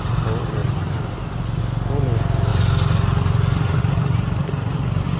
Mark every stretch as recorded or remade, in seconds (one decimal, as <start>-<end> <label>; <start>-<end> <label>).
0.0-0.6 recorded; 0.6-1.6 remade; 1.6-5.2 recorded